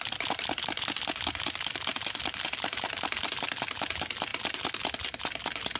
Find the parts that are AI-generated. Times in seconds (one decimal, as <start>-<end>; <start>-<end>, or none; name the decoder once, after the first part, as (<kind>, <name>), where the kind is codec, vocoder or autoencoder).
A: 1.9-3.6 (vocoder, BigVGAN v2); 4.3-5.8